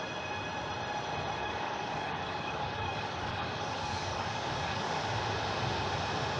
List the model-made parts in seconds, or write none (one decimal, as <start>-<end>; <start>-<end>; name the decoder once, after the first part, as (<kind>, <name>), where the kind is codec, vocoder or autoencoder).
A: 1.4-5.1 (codec, DAC)